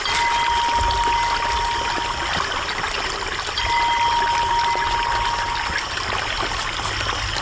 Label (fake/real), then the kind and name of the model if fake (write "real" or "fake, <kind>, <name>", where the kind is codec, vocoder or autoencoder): real